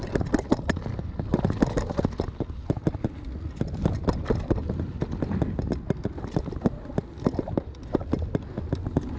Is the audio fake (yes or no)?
no